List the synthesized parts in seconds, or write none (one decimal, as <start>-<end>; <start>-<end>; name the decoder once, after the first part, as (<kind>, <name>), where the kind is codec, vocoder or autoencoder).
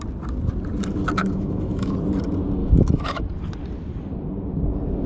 1.2-1.9 (autoencoder, DAC-VAE); 2.6-3.2